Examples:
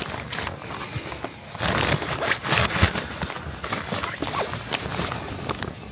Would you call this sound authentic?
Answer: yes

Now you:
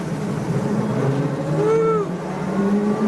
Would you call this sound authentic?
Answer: yes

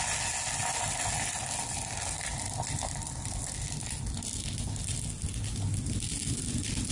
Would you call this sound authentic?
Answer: yes